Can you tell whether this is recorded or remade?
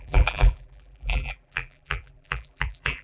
remade